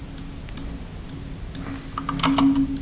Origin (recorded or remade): recorded